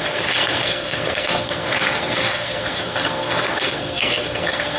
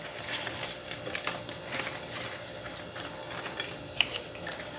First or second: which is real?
second